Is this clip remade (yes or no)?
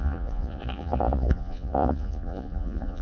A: yes